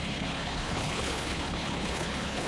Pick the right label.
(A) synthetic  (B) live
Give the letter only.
A